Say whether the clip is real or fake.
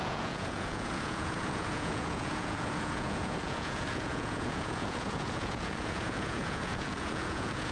fake